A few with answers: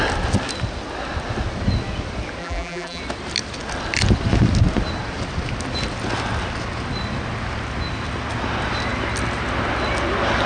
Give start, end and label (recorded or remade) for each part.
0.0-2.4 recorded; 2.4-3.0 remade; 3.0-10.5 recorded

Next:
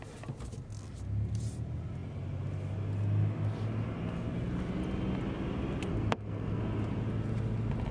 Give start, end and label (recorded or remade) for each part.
0.0-5.9 recorded; 5.9-6.6 remade; 6.6-7.9 recorded

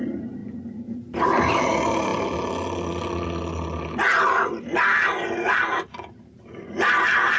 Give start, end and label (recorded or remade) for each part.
0.0-2.1 remade; 2.1-5.0 recorded; 5.0-7.4 remade

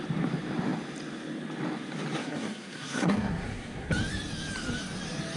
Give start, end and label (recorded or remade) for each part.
0.0-2.2 recorded; 2.2-3.9 remade; 3.9-5.4 recorded

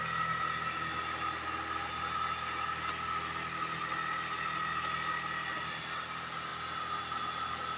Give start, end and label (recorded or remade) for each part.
0.0-7.8 recorded

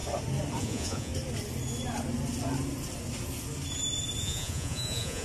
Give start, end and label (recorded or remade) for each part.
0.0-0.6 recorded; 0.6-1.1 remade; 1.1-4.2 recorded; 4.2-5.2 remade